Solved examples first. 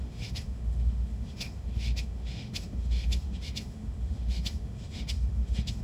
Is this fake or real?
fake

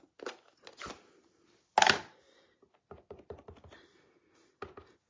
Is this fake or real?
real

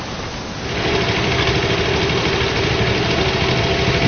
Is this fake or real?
real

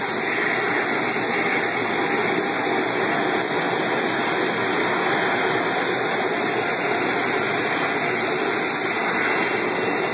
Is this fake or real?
real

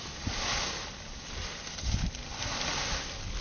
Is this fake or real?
real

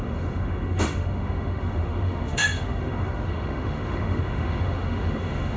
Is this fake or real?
fake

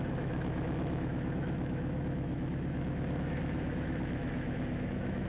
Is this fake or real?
fake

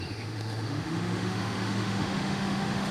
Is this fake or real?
fake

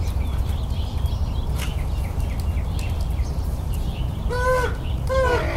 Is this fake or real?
real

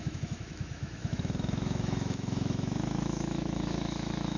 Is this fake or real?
fake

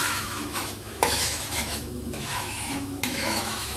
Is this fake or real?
fake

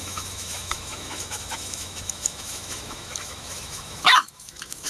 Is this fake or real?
fake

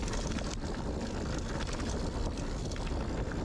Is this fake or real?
real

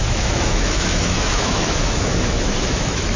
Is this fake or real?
fake